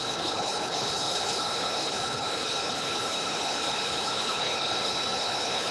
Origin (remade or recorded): remade